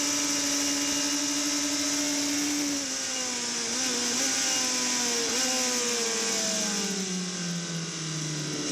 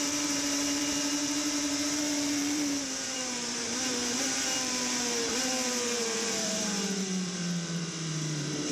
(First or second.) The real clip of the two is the first